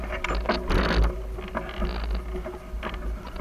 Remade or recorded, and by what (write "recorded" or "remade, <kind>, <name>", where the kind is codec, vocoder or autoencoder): recorded